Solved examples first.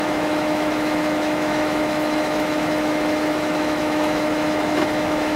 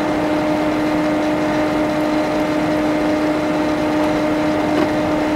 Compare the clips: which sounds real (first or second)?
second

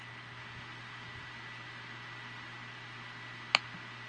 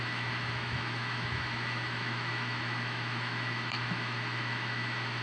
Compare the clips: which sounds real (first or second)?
first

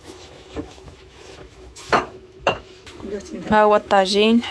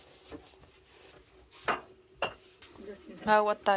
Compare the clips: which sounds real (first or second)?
second